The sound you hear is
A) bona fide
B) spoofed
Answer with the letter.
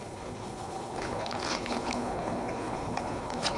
B